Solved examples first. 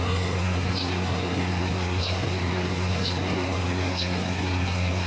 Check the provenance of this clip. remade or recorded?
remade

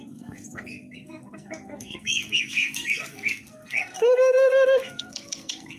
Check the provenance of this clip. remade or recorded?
remade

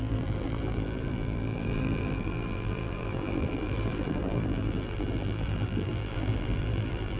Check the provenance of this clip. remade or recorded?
remade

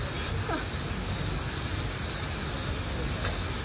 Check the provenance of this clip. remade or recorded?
recorded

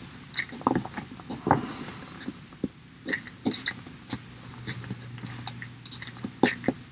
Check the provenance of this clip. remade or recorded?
recorded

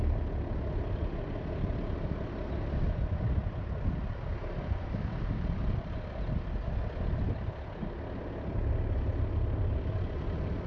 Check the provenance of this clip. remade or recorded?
recorded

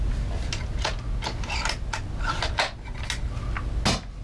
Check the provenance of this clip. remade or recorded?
recorded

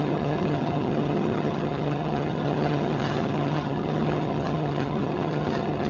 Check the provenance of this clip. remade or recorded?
remade